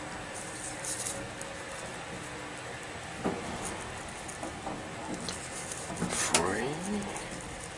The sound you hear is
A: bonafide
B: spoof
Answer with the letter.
A